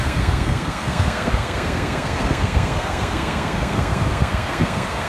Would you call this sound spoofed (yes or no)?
yes